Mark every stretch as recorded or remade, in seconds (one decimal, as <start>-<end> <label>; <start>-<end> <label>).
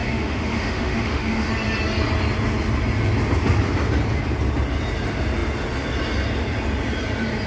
0.0-1.5 remade; 1.5-7.5 recorded